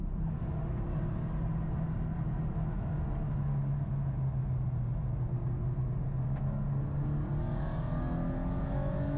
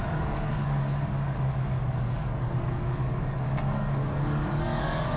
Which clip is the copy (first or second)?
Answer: second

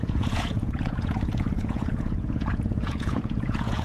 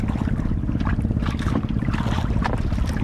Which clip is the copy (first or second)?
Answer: first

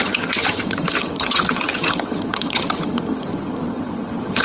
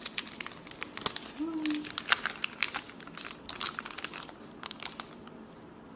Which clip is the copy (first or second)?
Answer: first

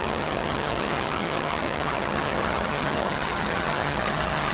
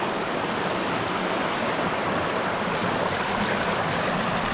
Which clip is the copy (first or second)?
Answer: first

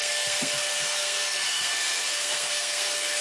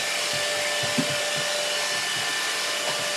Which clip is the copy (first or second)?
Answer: first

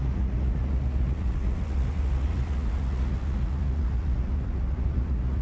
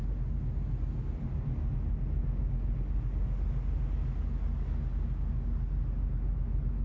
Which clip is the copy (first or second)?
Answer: first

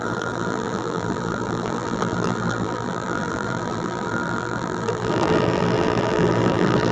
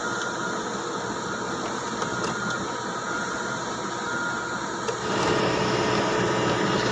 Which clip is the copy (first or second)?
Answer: first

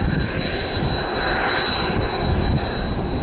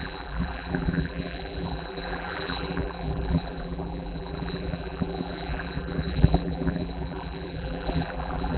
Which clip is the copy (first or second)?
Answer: second